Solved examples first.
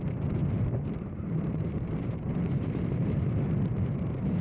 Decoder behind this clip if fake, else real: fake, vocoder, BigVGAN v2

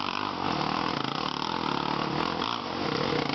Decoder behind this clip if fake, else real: real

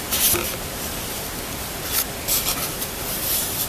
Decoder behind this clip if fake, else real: real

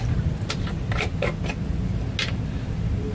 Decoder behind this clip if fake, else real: real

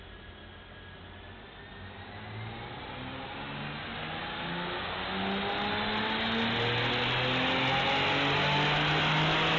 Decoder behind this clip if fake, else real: real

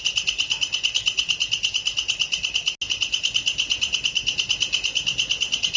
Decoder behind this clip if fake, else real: real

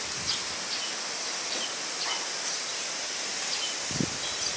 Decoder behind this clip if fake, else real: real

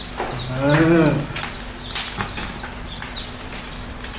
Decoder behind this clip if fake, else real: real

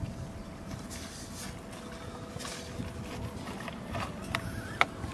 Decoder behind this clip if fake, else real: real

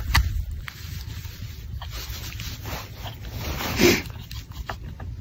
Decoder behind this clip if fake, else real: real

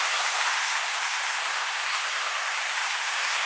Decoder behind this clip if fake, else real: fake, codec, SNAC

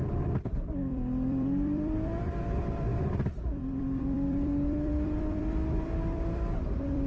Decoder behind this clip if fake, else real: fake, vocoder, BigVGAN v2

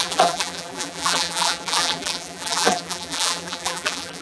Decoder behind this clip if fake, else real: fake, vocoder, BigVGAN v2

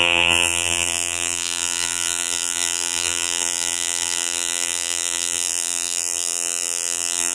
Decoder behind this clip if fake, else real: fake, vocoder, BigVGAN v2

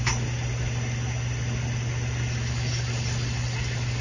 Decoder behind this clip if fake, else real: real